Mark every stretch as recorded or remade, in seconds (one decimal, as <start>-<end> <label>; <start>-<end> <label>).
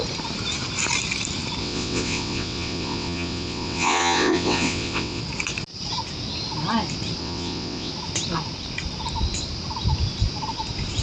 0.0-1.6 recorded; 1.6-5.2 remade; 5.2-7.2 recorded; 7.2-7.9 remade; 7.9-11.0 recorded